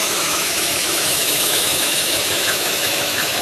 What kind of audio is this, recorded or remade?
remade